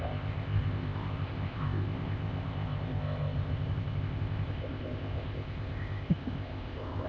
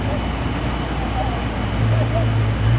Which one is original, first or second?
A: second